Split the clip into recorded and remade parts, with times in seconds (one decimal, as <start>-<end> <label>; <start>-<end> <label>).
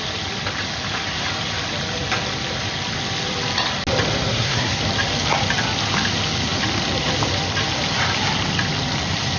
0.0-4.3 recorded; 4.3-4.8 remade; 4.8-9.4 recorded